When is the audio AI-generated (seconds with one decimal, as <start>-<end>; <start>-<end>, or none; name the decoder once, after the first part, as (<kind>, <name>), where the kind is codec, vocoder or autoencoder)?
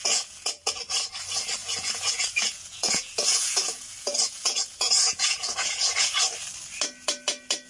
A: 0.0-0.7 (vocoder, Vocos); 1.6-6.2